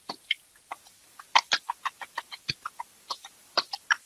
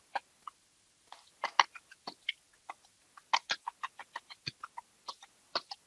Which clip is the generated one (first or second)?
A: first